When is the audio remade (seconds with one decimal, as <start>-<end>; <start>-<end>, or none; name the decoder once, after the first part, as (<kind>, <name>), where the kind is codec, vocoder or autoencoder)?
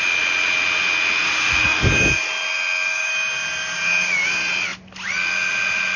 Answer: none